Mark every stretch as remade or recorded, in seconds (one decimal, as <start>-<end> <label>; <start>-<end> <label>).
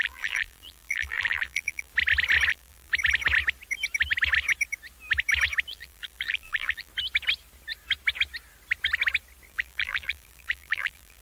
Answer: 0.0-1.9 remade; 1.9-2.5 recorded; 2.5-2.9 remade; 2.9-5.7 recorded; 5.7-6.9 remade; 6.9-9.5 recorded; 9.5-11.2 remade